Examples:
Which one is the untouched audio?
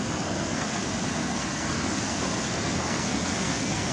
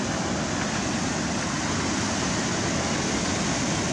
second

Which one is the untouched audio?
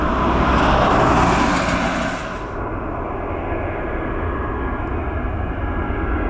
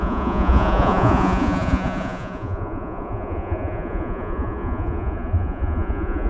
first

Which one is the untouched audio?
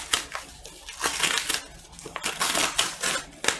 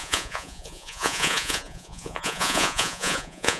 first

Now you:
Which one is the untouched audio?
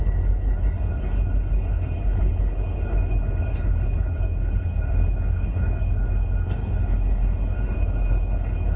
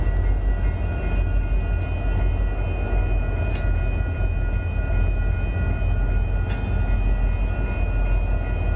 second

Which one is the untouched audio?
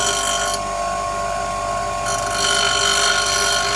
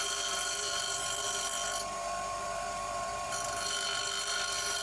first